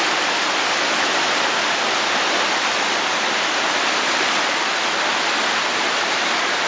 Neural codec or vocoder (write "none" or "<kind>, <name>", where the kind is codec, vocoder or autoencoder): none